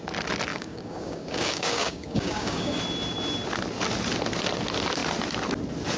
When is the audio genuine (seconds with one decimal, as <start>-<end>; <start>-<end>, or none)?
0.0-0.5; 2.8-6.0